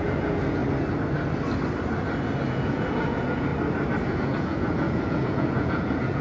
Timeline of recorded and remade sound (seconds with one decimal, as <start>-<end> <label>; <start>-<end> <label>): 0.0-0.6 remade; 0.6-2.5 recorded; 2.5-3.5 remade; 3.5-4.0 recorded; 4.0-6.2 remade

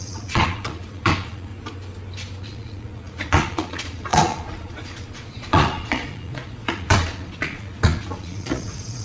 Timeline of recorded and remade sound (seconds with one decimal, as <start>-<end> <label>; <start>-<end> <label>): 0.0-1.5 remade; 1.5-2.4 recorded; 2.4-9.0 remade

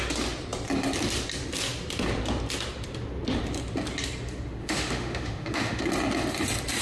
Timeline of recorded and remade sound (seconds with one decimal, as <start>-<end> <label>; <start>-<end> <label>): 0.0-4.6 recorded; 4.6-5.8 remade; 5.8-6.8 recorded